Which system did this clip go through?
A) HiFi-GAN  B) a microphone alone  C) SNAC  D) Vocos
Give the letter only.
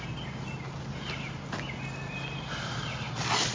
B